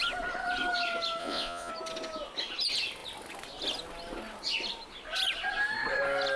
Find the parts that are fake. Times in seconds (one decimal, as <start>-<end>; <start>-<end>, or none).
1.2-1.7

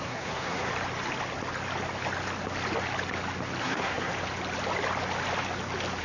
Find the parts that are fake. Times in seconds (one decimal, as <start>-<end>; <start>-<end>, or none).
0.0-0.7; 3.6-4.1